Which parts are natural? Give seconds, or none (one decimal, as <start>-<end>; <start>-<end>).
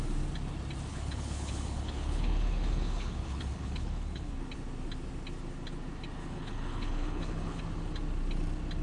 0.0-0.9; 4.3-6.2; 7.6-8.8